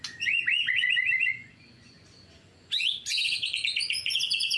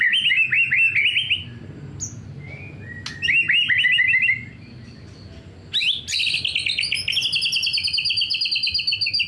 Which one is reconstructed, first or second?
first